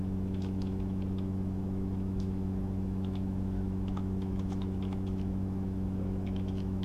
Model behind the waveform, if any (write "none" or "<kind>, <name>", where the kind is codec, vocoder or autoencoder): autoencoder, DAC-VAE